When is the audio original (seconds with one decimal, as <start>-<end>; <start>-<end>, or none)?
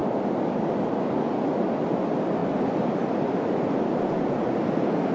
0.0-5.1